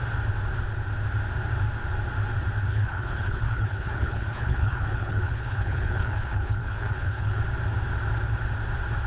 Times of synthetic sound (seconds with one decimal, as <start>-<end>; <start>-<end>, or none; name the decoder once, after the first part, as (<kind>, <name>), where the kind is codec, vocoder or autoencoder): 2.7-7.4 (codec, HILCodec)